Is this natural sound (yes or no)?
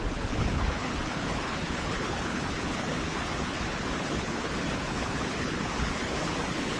no